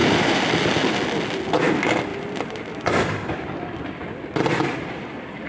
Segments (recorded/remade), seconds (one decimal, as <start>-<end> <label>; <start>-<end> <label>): 0.0-0.7 remade; 0.7-2.1 recorded; 2.1-5.5 remade